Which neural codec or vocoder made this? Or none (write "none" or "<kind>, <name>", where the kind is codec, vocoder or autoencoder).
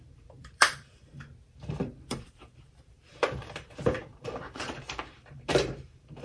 vocoder, BigVGAN v2